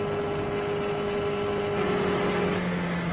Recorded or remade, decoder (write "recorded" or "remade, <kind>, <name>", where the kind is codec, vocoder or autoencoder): recorded